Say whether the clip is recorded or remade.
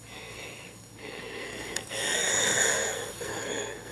remade